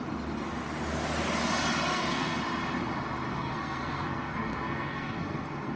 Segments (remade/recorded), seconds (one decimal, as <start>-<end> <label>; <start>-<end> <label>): 0.0-1.9 recorded; 1.9-2.4 remade; 2.4-3.3 recorded; 3.3-5.8 remade